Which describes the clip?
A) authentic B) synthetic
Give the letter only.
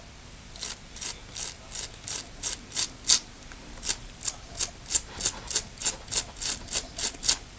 A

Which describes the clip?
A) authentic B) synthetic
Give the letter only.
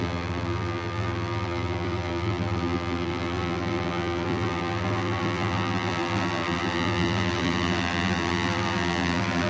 B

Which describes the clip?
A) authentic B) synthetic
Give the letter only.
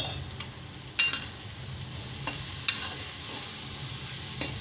A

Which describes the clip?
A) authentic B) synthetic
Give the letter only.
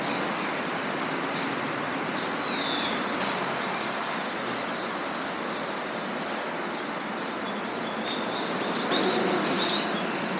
A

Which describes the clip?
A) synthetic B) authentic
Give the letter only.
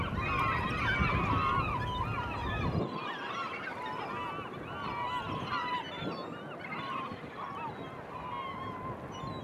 B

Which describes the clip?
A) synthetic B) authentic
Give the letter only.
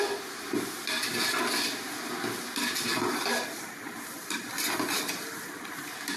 B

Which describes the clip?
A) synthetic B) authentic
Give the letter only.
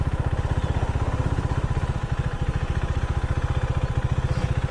B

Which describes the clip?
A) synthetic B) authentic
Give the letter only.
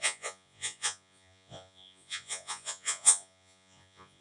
A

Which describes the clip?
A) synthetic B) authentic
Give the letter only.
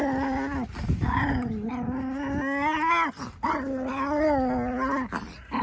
B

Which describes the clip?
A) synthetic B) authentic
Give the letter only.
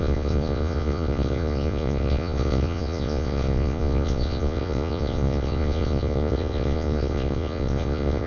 A